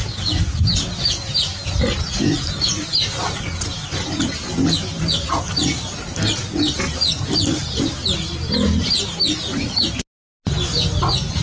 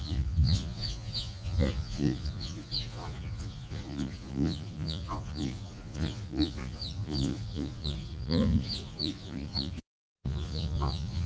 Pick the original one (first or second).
first